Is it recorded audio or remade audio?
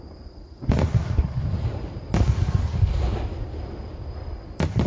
recorded